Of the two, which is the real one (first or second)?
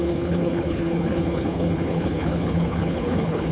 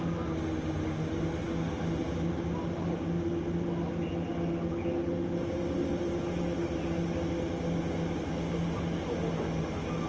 second